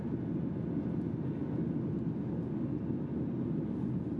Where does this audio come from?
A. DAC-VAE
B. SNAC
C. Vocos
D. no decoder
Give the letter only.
D